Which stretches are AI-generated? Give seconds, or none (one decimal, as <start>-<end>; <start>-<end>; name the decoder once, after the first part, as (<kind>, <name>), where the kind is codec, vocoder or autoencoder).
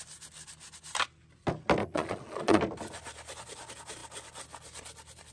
1.8-2.6 (vocoder, Vocos)